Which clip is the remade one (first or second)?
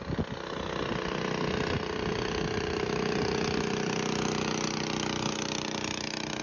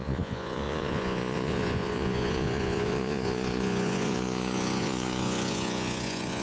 second